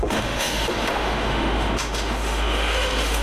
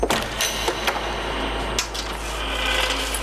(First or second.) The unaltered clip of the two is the second